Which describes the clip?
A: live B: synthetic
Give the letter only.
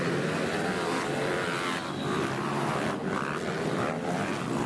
A